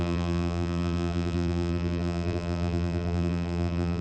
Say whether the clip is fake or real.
fake